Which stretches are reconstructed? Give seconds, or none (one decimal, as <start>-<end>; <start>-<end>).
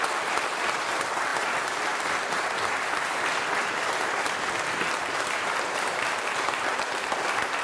0.0-7.6